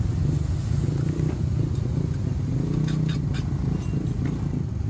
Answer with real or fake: real